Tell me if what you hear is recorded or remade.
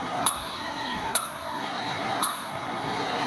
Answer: remade